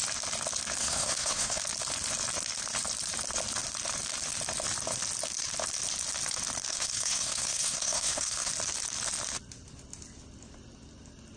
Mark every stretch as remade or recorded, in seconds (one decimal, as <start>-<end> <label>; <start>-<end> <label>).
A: 0.0-0.8 recorded; 0.8-1.6 remade; 1.6-6.7 recorded; 6.7-8.5 remade; 8.5-11.4 recorded